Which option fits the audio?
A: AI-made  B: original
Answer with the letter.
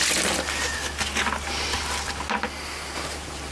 B